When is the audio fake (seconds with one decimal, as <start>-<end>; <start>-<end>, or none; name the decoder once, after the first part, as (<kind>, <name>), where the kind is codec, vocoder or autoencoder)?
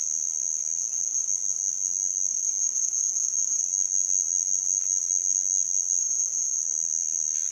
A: 0.8-1.3 (vocoder, BigVGAN v2); 2.3-3.6; 6.0-6.6